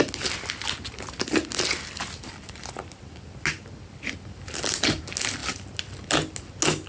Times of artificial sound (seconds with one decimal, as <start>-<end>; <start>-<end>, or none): none